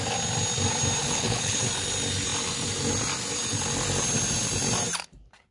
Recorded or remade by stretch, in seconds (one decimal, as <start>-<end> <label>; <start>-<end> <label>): 0.0-1.0 recorded; 1.0-1.6 remade; 1.6-5.5 recorded